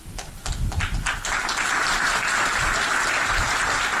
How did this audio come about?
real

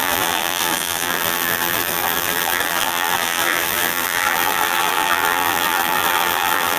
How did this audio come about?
fake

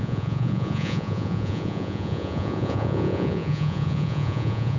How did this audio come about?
fake